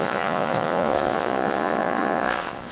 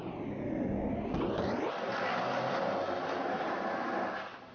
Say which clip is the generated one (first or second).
first